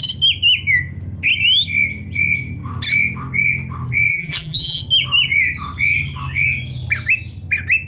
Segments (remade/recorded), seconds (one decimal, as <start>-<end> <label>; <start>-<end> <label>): 0.0-4.1 recorded; 4.1-4.8 remade; 4.8-7.9 recorded